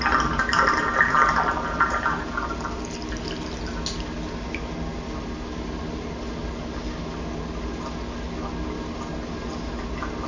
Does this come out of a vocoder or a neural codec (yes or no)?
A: no